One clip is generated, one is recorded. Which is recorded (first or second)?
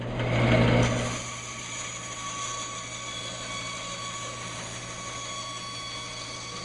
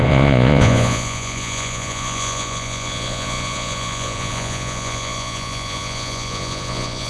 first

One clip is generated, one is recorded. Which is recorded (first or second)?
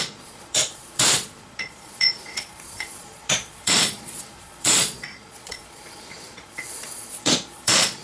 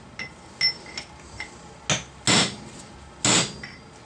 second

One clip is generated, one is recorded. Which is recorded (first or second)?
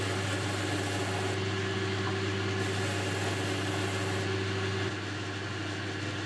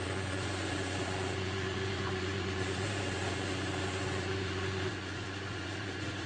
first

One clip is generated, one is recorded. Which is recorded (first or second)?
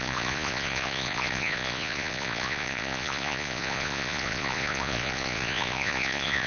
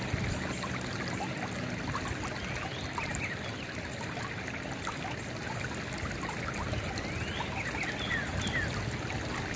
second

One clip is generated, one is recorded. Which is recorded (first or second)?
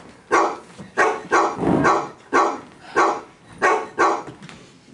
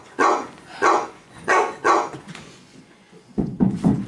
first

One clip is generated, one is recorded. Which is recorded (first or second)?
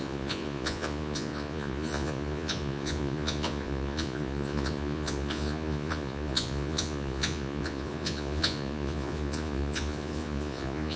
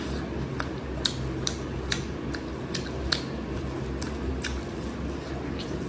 second